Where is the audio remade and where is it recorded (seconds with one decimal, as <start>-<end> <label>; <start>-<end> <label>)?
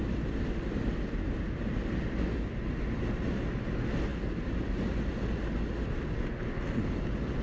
0.0-7.4 recorded